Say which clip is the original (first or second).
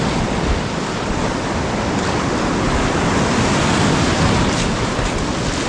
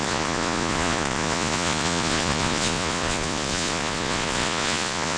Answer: first